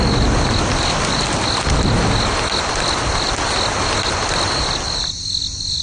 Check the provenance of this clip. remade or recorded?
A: recorded